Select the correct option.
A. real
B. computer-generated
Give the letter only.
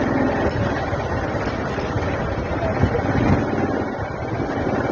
A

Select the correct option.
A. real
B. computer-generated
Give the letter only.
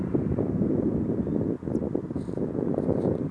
A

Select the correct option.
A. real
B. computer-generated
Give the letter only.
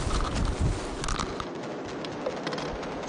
A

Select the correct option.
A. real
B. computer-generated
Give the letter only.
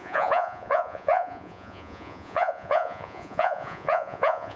B